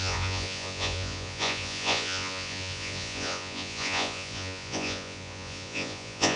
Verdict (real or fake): fake